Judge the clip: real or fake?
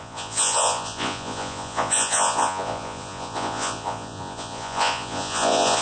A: fake